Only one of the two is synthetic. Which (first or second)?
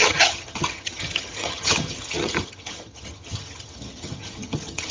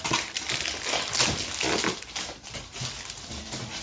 first